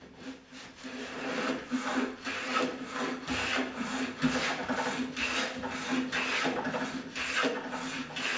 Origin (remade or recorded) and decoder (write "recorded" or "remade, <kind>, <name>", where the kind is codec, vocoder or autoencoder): recorded